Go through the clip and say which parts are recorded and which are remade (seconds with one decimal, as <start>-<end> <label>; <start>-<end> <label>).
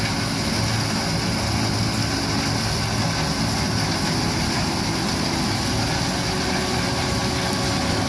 0.0-8.1 recorded